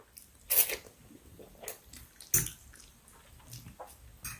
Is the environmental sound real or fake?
real